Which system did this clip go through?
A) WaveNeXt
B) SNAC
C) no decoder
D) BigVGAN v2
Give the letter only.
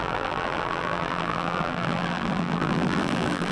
D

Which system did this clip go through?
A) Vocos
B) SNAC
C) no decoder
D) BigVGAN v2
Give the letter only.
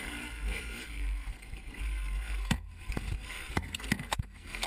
B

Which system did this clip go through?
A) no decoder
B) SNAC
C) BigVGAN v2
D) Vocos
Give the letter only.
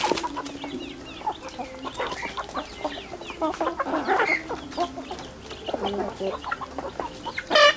A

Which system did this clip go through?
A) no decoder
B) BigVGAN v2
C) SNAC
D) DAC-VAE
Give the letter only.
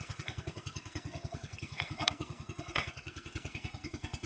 C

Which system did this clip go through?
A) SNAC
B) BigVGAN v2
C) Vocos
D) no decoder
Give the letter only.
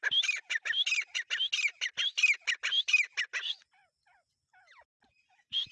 D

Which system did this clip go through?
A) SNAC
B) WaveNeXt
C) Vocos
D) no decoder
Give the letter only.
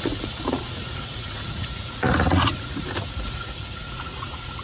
C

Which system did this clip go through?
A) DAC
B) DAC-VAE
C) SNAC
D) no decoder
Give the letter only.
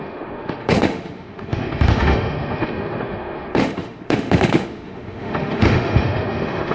B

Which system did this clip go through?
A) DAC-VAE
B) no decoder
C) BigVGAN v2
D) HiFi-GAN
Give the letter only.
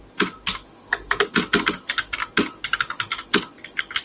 B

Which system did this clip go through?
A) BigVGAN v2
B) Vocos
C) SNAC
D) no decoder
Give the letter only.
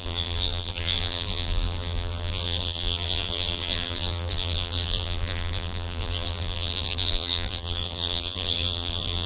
A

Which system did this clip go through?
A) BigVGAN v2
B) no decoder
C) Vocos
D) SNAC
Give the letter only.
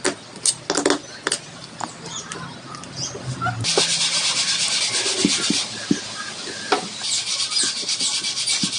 B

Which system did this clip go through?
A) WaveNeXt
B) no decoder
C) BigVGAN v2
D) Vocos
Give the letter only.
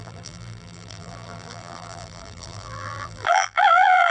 C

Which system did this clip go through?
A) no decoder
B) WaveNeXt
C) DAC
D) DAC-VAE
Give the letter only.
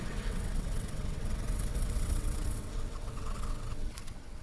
B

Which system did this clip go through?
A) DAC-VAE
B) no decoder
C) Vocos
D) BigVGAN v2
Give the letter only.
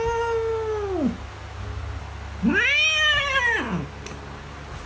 B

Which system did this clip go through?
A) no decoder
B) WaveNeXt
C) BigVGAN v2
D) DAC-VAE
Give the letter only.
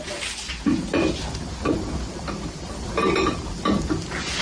A